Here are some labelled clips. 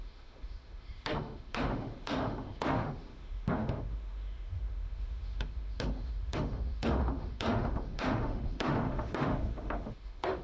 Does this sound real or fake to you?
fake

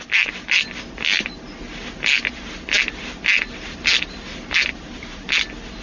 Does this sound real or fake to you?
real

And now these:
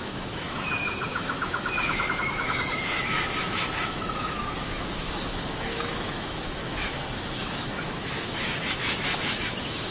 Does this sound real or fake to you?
fake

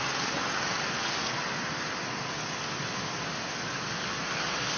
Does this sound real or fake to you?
real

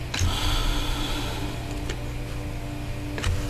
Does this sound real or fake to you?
real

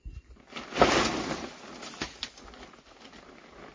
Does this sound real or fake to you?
real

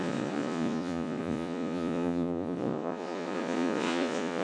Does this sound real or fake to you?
fake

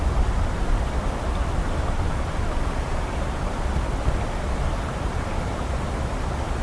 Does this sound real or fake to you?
real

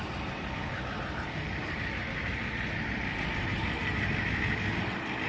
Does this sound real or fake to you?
real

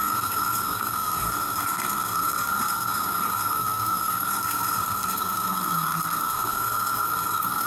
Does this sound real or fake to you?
fake